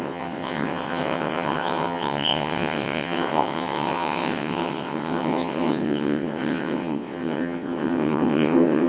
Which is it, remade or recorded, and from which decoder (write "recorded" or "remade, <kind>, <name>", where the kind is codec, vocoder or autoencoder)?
remade, vocoder, WaveNeXt